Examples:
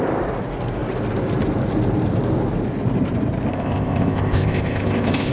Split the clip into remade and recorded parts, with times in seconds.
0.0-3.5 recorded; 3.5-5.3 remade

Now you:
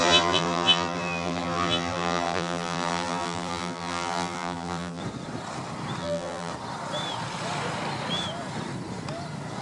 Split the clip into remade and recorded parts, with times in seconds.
0.0-5.0 remade; 5.0-6.0 recorded; 6.0-6.5 remade; 6.5-9.6 recorded

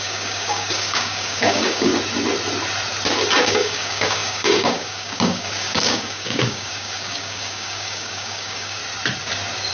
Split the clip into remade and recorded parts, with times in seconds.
0.0-1.9 remade; 1.9-3.4 recorded; 3.4-8.8 remade; 8.8-9.7 recorded